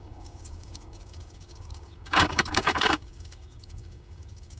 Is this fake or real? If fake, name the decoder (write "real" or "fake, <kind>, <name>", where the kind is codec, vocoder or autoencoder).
fake, codec, DAC